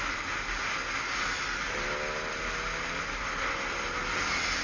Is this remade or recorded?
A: recorded